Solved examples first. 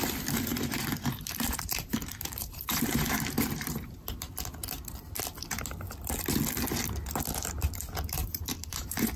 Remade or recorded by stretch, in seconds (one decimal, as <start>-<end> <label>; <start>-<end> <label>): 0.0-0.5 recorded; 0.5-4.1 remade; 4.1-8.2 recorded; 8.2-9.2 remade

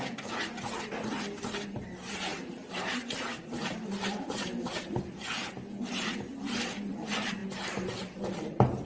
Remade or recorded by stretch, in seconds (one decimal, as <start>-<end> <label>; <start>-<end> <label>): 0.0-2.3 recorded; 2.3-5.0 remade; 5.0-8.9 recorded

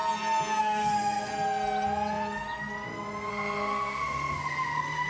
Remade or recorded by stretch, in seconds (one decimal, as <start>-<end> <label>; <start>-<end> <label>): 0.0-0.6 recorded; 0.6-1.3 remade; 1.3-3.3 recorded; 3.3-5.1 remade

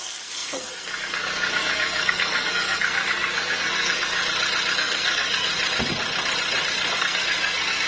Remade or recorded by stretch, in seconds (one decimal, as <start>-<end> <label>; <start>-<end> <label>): 0.0-4.2 remade; 4.2-4.7 recorded; 4.7-5.5 remade; 5.5-6.9 recorded; 6.9-7.9 remade

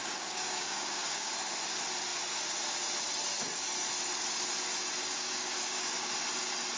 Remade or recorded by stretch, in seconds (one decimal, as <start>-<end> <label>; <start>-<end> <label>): 0.0-1.3 remade; 1.3-5.1 recorded; 5.1-6.1 remade; 6.1-6.8 recorded

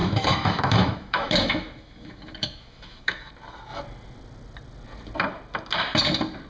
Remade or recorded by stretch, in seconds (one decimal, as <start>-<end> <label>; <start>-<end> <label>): 0.0-3.3 remade; 3.3-6.5 recorded

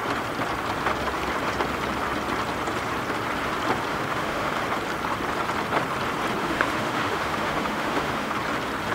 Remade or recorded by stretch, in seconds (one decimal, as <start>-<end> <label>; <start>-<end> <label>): 0.0-3.9 recorded; 3.9-4.6 remade; 4.6-6.4 recorded; 6.4-8.3 remade; 8.3-8.9 recorded

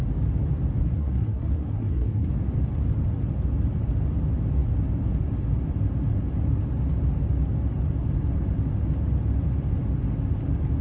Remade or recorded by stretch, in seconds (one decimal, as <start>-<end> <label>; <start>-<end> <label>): 0.0-0.8 recorded; 0.8-2.3 remade; 2.3-10.8 recorded